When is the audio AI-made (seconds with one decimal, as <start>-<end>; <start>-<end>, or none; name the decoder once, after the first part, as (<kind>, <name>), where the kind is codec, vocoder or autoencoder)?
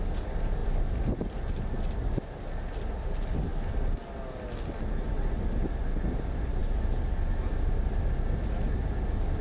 none